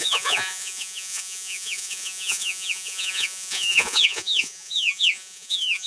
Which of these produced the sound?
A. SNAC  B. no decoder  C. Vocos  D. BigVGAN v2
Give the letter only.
C